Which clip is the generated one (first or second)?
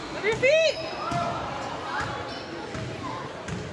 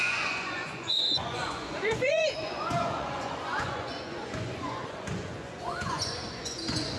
second